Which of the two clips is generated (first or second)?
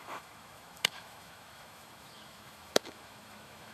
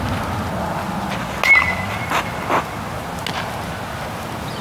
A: first